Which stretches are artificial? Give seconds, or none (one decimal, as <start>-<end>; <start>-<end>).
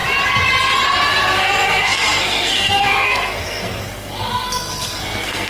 1.2-5.5